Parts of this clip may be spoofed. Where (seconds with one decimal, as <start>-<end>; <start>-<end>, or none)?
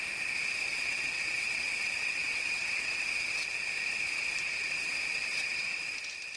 0.7-3.5; 4.4-5.8